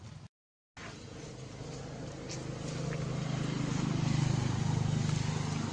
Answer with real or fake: real